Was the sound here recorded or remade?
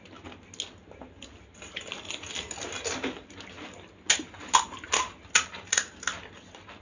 recorded